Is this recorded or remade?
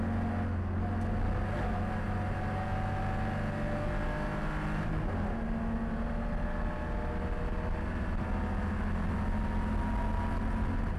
recorded